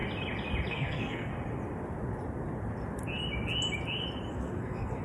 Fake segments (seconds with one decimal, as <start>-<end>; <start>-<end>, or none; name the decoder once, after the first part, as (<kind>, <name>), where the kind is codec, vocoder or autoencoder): 0.7-1.3 (codec, SNAC); 4.3-5.0